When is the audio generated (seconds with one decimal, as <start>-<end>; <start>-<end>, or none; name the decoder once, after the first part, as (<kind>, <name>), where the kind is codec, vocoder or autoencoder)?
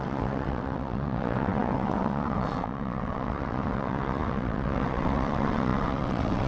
0.0-6.5 (vocoder, WaveNeXt)